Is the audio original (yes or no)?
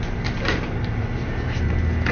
yes